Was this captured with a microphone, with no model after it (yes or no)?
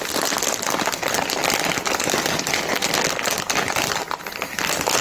yes